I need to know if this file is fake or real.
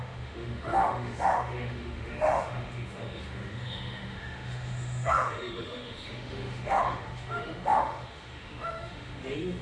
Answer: fake